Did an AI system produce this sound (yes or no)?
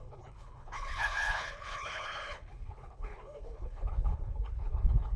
yes